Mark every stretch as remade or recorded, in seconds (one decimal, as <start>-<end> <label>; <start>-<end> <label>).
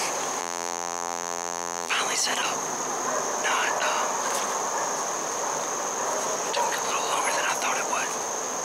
0.0-0.4 recorded; 0.4-1.9 remade; 1.9-8.6 recorded